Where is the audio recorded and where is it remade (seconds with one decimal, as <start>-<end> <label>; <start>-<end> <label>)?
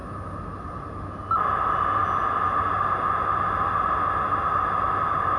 0.0-5.4 recorded